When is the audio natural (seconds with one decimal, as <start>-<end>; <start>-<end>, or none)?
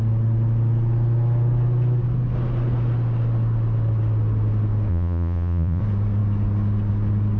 0.0-4.9; 5.8-7.4